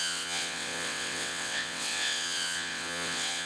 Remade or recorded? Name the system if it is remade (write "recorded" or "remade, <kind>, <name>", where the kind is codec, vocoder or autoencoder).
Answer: remade, vocoder, WaveNeXt